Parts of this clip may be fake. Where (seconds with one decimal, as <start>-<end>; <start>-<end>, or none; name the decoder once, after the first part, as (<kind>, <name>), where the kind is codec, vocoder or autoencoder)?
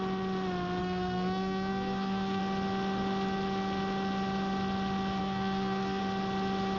0.8-2.4 (codec, SNAC); 5.2-6.0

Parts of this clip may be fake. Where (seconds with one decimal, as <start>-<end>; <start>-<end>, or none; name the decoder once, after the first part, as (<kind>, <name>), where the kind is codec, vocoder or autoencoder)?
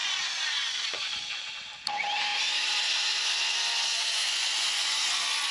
0.0-1.5 (vocoder, Vocos); 3.9-5.1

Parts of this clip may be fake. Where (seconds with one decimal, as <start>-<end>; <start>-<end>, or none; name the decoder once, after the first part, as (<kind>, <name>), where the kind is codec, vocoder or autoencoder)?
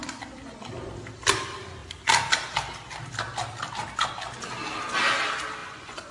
5.6-6.1 (vocoder, Vocos)